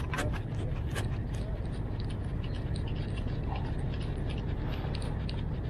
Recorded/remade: recorded